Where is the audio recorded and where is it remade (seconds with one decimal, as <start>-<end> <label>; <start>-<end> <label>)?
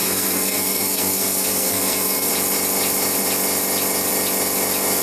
0.0-2.3 remade; 2.3-5.0 recorded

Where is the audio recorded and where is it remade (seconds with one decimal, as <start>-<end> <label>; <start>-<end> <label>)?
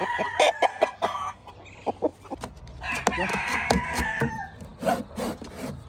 0.0-0.7 recorded; 0.7-1.5 remade; 1.5-3.3 recorded; 3.3-4.3 remade; 4.3-5.9 recorded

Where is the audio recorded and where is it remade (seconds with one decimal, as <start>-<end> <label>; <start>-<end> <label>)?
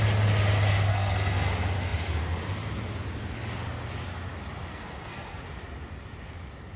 0.0-0.9 recorded; 0.9-1.5 remade; 1.5-4.7 recorded; 4.7-5.4 remade; 5.4-6.8 recorded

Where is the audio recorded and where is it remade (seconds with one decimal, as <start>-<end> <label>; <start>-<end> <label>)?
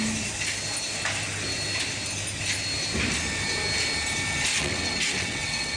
0.0-4.5 recorded; 4.5-5.8 remade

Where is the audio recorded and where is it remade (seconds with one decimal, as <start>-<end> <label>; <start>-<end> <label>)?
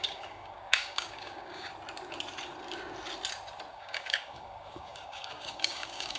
0.0-1.7 remade; 1.7-3.7 recorded; 3.7-6.2 remade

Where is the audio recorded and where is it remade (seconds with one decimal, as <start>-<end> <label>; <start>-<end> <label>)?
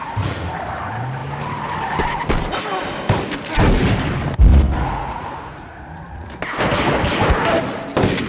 0.0-0.5 remade; 0.5-4.5 recorded; 4.5-6.3 remade; 6.3-8.3 recorded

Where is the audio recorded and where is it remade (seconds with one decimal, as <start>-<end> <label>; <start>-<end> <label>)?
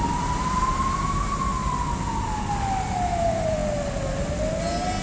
0.0-1.5 remade; 1.5-3.1 recorded; 3.1-3.6 remade; 3.6-5.0 recorded